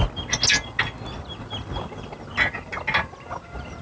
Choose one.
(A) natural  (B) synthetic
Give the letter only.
A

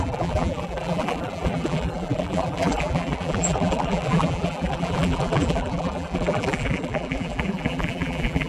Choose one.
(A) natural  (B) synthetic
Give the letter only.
B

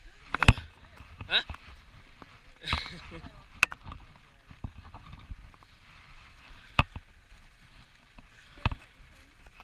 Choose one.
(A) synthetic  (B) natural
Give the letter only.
B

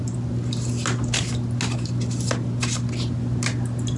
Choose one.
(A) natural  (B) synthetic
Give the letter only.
A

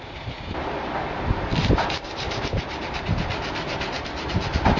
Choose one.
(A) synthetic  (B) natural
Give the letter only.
B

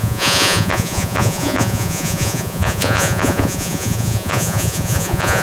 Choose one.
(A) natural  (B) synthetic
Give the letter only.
B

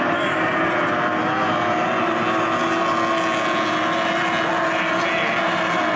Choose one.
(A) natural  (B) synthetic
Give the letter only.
A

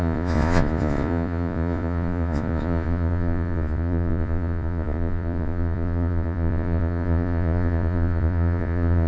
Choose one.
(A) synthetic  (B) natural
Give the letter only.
A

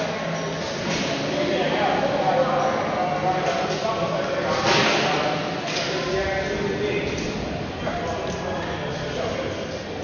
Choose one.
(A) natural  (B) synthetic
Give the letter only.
A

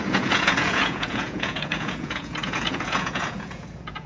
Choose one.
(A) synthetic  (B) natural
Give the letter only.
A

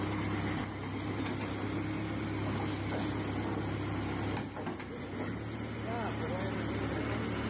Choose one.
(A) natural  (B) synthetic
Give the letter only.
A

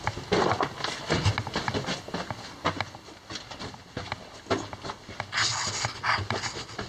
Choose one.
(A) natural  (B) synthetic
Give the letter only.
A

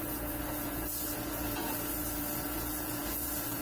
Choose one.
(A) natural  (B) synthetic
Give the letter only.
B